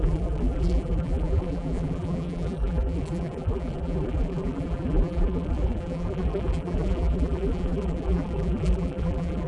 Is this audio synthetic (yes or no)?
yes